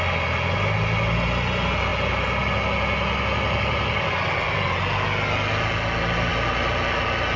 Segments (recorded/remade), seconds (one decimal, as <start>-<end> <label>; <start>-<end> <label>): 0.0-7.4 recorded